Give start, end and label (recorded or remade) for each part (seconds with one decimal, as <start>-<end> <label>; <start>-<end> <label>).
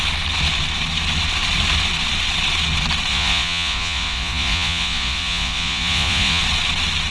0.0-3.1 recorded; 3.1-6.4 remade; 6.4-7.1 recorded